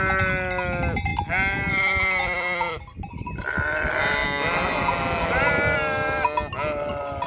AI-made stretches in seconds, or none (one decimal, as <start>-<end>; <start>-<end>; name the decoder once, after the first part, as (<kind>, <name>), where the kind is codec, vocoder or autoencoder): none